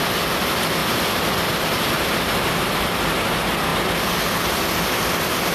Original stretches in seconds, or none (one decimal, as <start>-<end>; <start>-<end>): 0.0-5.5